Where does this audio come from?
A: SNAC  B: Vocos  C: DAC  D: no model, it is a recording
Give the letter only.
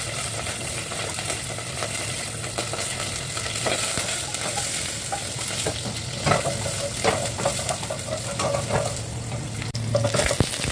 D